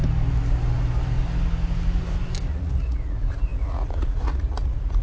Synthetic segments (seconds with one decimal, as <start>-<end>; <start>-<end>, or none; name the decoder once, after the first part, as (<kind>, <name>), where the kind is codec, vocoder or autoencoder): 2.5-5.0 (vocoder, Vocos)